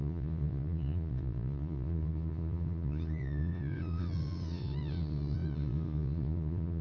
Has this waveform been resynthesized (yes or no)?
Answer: yes